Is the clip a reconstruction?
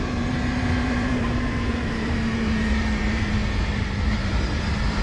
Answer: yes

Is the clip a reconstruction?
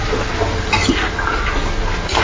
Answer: no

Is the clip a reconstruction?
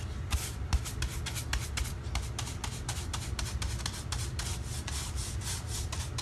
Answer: no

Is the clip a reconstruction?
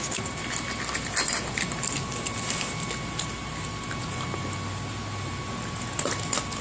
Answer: no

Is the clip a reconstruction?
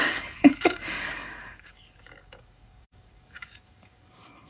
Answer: yes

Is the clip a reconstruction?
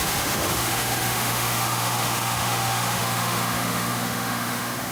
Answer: yes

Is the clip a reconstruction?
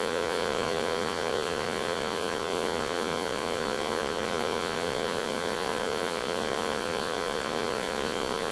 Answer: yes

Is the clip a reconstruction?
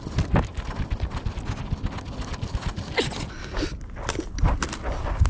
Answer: no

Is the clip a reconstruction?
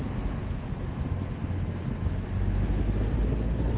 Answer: no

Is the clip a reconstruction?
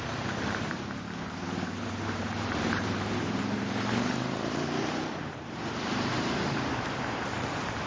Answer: yes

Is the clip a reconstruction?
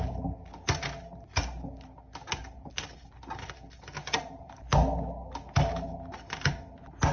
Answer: no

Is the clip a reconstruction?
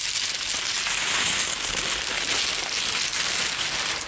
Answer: no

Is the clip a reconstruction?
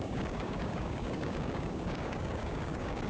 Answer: yes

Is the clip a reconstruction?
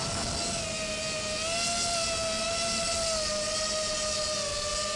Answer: no